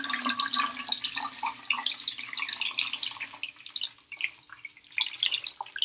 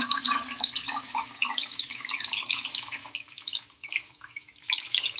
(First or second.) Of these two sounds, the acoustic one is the first